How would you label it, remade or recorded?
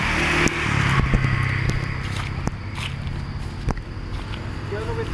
recorded